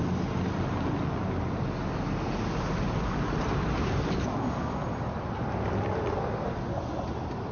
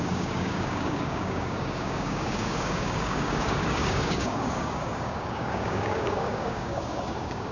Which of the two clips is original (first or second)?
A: first